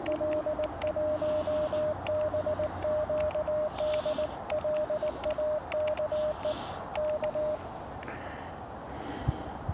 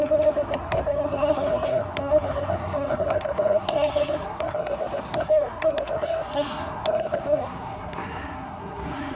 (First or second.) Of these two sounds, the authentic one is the first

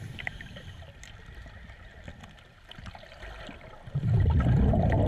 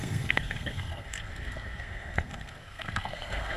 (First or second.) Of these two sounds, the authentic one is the first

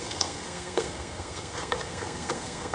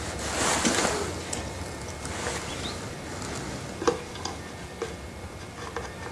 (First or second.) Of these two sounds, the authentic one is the second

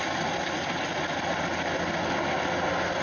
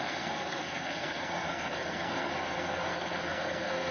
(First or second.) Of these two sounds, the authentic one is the first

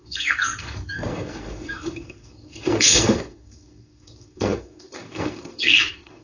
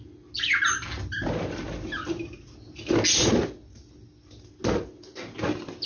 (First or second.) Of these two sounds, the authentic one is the second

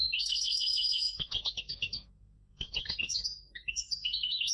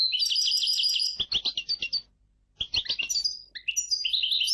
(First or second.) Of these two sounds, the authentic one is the second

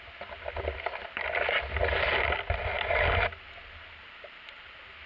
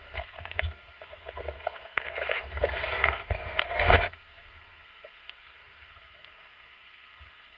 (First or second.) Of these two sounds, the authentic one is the first